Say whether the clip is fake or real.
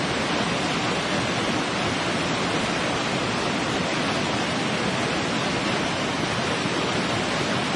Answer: real